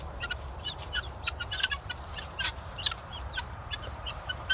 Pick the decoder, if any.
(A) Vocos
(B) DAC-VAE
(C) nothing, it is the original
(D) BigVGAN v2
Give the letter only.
D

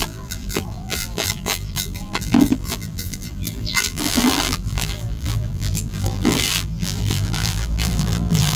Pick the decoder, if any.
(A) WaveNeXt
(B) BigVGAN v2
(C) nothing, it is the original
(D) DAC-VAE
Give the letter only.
B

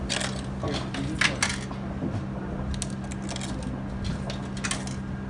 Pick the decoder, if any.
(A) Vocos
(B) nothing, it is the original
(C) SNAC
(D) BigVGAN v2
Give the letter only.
B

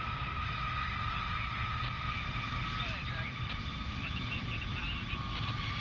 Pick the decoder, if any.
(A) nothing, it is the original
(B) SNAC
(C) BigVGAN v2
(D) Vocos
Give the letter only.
C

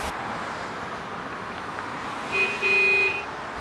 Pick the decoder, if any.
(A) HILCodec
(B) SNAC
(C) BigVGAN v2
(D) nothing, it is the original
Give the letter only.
D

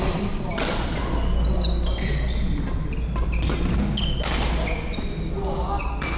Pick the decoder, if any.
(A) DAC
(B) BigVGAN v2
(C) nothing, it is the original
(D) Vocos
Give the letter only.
C